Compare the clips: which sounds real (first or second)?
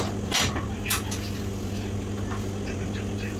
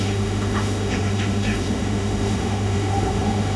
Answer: first